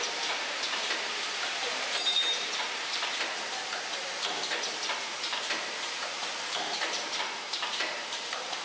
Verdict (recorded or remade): remade